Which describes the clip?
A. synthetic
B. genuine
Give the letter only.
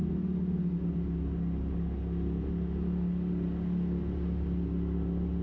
B